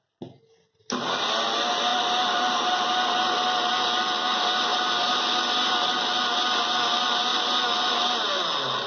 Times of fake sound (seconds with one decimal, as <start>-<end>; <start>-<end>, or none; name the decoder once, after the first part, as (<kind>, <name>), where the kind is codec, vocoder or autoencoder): 1.9-3.1 (vocoder, BigVGAN v2); 4.7-5.2